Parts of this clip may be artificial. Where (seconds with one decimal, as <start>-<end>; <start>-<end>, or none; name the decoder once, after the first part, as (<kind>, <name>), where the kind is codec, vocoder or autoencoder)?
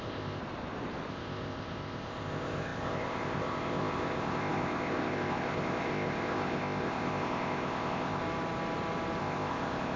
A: 0.0-0.4 (codec, ZipCodec); 1.1-8.2; 9.2-10.0